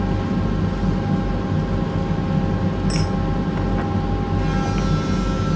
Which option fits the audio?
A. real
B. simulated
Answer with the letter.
A